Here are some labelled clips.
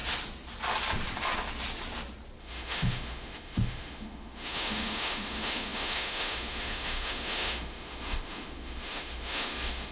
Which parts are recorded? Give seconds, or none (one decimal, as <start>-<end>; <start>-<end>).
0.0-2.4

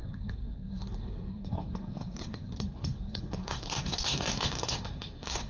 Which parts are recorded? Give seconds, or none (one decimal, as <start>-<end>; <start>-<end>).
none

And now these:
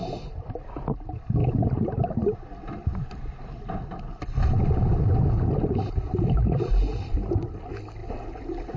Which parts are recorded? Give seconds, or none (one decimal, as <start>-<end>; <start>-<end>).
0.0-8.8